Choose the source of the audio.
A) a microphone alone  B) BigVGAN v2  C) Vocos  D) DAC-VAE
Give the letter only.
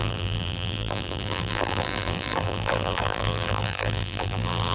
B